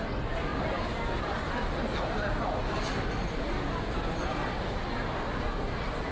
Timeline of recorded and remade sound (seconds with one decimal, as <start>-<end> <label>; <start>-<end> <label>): 0.0-6.1 recorded